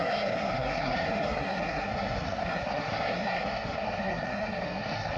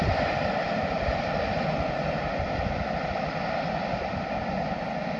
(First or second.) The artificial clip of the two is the first